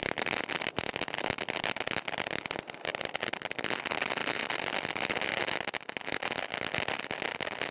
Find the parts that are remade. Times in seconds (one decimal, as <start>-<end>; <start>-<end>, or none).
none